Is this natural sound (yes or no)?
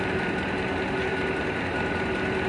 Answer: yes